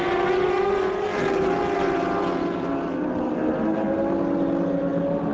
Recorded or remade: recorded